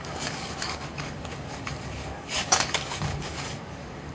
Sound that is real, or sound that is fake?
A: fake